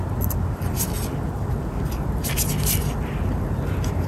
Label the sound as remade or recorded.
recorded